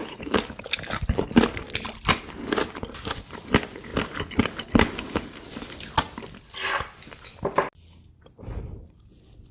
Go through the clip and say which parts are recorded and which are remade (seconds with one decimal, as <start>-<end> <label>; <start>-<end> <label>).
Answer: 0.0-1.0 remade; 1.0-9.5 recorded